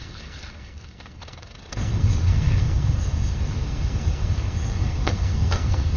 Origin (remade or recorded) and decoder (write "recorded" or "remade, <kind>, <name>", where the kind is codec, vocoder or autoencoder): remade, codec, SNAC